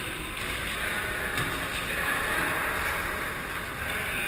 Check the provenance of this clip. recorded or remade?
recorded